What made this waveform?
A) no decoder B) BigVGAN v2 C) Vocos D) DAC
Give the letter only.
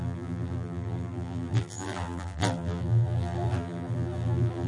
B